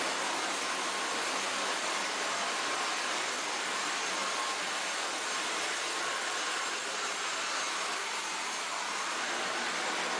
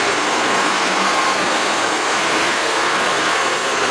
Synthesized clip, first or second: second